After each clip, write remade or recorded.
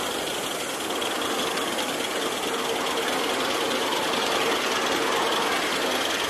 recorded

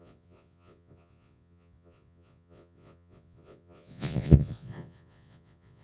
remade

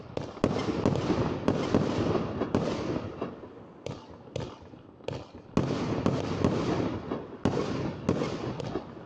recorded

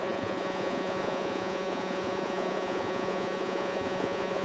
remade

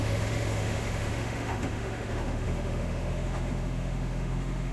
remade